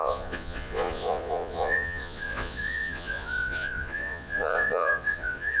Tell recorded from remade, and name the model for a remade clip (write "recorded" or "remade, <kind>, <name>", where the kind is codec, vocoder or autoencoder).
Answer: remade, vocoder, Vocos